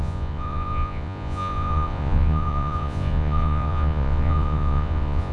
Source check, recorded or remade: remade